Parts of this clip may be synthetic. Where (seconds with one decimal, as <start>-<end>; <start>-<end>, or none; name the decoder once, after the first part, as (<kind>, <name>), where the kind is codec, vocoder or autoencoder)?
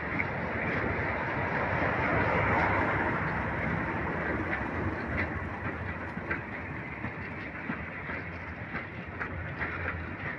none